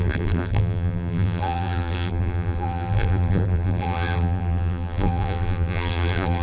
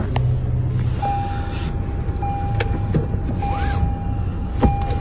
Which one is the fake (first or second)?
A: first